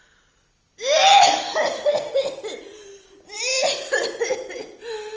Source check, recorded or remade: recorded